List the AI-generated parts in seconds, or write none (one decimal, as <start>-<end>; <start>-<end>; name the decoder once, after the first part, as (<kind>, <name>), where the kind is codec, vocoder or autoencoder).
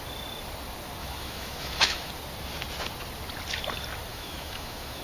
1.0-2.1 (autoencoder, DAC-VAE); 4.1-5.0